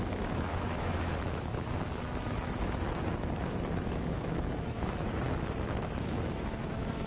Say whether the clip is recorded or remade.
remade